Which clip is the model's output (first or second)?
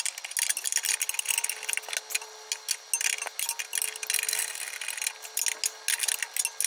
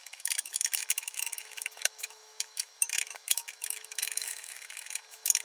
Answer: second